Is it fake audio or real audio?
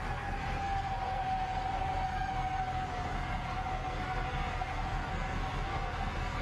fake